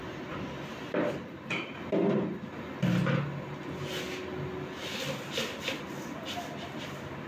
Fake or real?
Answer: real